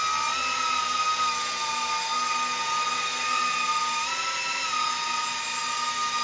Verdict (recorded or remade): recorded